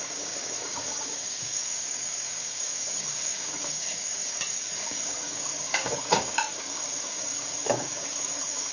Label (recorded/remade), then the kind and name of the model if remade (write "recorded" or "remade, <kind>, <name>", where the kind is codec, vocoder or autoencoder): remade, codec, DAC